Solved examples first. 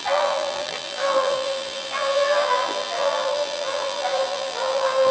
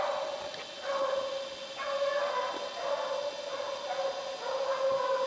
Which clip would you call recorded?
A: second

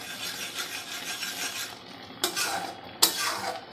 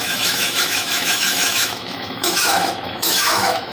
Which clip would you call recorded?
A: first